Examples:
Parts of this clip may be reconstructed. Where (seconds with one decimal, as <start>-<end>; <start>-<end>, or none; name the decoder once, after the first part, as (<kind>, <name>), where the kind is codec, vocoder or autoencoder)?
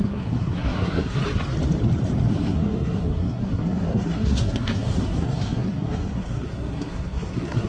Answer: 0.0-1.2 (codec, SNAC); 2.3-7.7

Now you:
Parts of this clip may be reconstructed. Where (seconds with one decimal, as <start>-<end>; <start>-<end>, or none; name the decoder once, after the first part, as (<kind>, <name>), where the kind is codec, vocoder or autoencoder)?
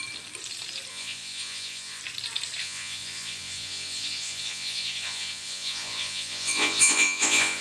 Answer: 0.9-2.0 (vocoder, Vocos); 2.6-7.6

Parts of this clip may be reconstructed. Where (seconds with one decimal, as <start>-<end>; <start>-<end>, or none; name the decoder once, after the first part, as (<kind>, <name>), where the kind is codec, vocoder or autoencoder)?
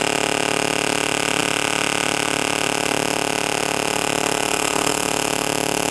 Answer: none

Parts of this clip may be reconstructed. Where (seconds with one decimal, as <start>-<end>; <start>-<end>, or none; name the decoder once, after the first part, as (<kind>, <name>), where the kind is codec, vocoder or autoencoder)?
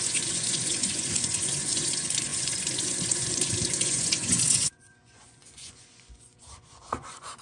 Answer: 0.0-7.4 (vocoder, Vocos)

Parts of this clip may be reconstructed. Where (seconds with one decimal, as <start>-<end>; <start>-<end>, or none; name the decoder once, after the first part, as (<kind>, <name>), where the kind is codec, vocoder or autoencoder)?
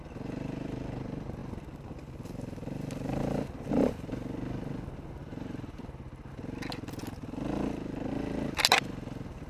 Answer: 5.2-5.8 (vocoder, BigVGAN v2)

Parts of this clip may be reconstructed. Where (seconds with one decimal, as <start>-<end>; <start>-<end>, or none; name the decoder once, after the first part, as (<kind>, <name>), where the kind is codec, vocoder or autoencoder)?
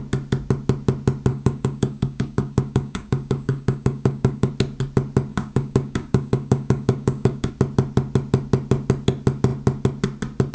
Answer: 1.3-4.5 (codec, DAC); 5.3-7.5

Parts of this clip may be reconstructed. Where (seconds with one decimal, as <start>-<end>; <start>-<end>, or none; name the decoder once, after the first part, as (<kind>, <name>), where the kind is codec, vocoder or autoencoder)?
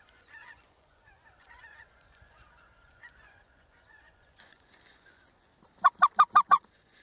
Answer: 0.0-5.5 (vocoder, Vocos); 6.5-7.0